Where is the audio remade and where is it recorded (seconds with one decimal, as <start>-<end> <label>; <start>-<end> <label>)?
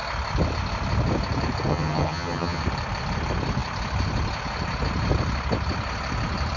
0.0-1.7 recorded; 1.7-2.6 remade; 2.6-6.6 recorded